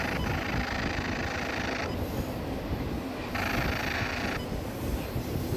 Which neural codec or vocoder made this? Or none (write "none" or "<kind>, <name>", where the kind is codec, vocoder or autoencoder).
none